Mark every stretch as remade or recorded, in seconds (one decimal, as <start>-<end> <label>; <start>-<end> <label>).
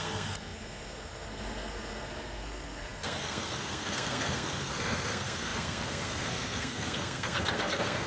0.0-8.1 remade